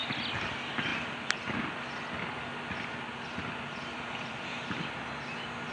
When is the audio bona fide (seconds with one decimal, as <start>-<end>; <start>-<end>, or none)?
0.0-5.7